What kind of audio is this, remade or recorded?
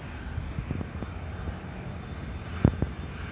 recorded